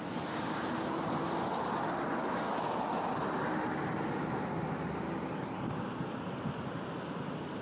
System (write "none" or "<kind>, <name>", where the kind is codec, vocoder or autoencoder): none